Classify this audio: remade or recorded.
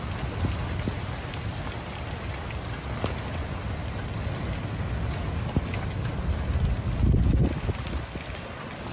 recorded